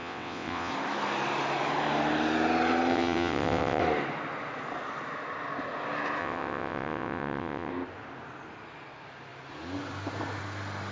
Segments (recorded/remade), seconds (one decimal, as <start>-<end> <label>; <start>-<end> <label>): 0.0-0.7 remade; 0.7-2.9 recorded; 2.9-3.8 remade; 3.8-6.2 recorded; 6.2-7.7 remade; 7.7-10.9 recorded